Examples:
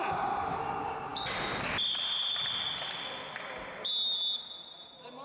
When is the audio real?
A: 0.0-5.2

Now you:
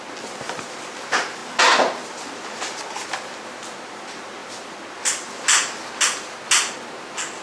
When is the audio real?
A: 0.0-7.4

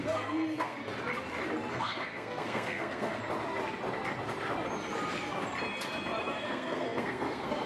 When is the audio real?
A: 0.8-1.7; 3.2-6.2

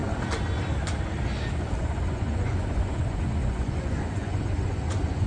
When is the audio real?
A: 0.0-1.8